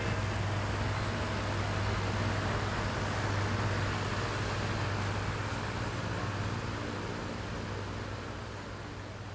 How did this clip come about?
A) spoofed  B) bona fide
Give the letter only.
B